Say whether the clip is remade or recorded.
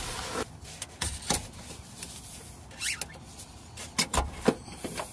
recorded